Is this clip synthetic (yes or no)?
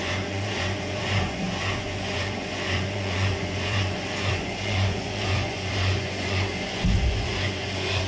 yes